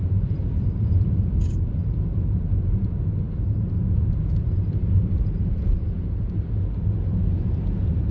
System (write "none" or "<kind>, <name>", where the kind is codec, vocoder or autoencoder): vocoder, BigVGAN v2